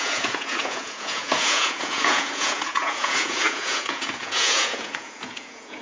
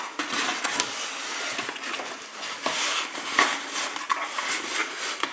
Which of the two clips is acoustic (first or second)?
second